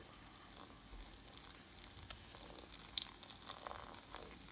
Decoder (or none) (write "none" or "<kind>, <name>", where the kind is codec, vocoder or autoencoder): none